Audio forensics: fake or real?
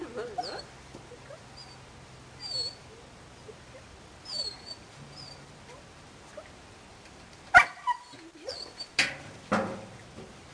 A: real